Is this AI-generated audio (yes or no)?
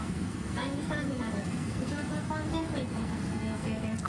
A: yes